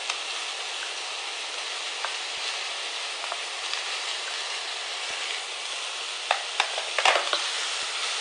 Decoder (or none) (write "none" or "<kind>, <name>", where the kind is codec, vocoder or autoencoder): none